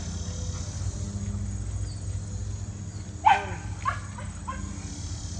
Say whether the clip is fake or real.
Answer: real